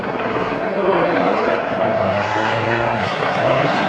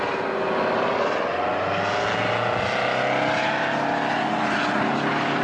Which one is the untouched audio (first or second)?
second